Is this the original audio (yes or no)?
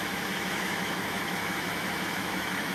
no